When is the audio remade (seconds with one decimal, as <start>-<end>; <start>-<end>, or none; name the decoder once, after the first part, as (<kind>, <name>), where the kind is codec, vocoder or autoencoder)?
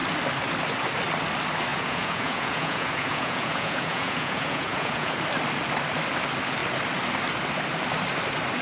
1.7-5.2 (vocoder, Vocos)